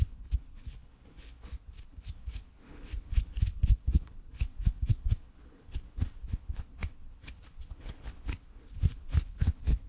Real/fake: fake